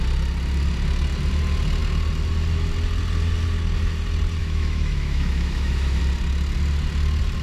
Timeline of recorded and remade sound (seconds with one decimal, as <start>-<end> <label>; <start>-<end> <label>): 0.0-4.4 recorded; 4.4-6.0 remade; 6.0-7.4 recorded